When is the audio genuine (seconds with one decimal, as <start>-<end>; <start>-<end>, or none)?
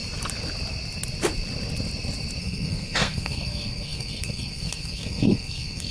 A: 0.0-2.4